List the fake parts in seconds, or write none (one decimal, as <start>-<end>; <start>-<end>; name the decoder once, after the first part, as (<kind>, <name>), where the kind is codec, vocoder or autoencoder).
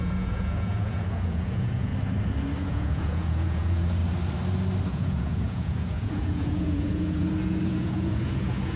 0.0-1.9 (vocoder, Vocos); 2.6-4.0; 4.9-8.8